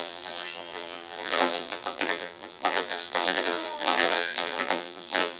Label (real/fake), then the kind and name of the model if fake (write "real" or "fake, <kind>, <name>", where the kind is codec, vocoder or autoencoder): fake, vocoder, BigVGAN v2